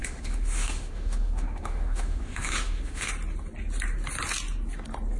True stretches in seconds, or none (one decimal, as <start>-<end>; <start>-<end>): 3.1-5.2